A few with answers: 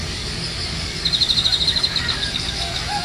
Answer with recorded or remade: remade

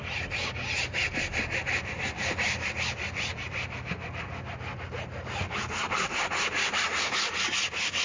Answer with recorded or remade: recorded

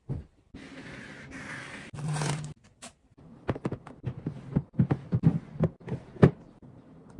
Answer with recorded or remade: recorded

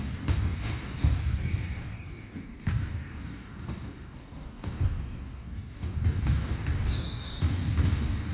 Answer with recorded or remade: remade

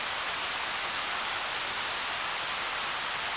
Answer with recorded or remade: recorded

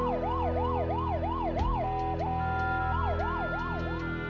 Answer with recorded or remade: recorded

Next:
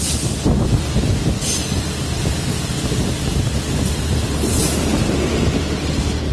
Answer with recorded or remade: recorded